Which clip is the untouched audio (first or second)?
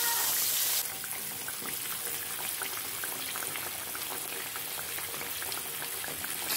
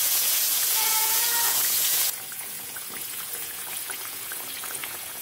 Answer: first